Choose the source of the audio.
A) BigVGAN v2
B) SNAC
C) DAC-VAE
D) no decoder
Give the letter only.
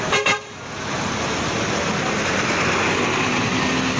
D